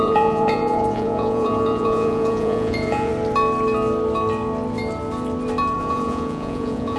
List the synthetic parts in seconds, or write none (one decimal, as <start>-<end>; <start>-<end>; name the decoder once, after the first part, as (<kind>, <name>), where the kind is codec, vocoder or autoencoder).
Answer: 0.0-3.1 (vocoder, Vocos); 5.8-7.0